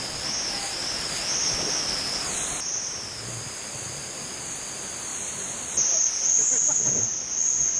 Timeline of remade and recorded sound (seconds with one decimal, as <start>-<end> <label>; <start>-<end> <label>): 0.0-7.8 recorded